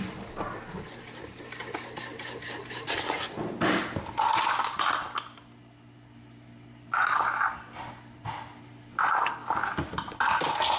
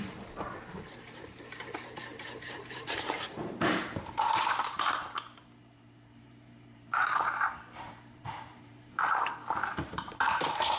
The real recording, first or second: first